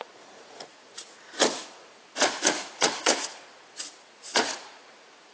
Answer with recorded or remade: remade